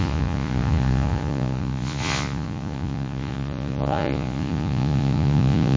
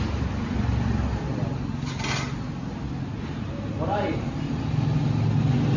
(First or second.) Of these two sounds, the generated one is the first